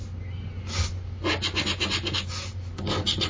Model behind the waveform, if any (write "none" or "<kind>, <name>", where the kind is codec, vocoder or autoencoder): none